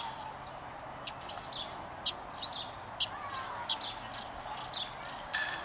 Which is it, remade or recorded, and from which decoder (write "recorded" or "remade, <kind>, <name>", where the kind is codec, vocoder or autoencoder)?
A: recorded